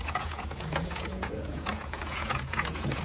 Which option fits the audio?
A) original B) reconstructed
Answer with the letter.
B